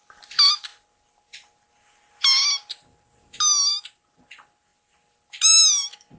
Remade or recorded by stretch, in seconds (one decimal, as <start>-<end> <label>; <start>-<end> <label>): 0.0-6.2 recorded